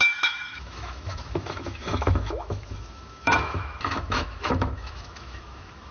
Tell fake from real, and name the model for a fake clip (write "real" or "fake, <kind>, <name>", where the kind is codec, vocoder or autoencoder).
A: fake, autoencoder, DAC-VAE